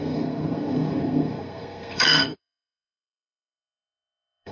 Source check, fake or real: fake